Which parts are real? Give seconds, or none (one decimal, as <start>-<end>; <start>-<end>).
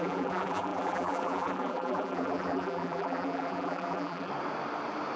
4.3-5.2